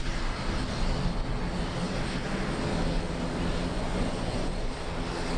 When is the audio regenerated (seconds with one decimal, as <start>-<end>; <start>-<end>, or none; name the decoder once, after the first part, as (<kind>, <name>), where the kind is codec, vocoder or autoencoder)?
3.7-4.7 (vocoder, Vocos)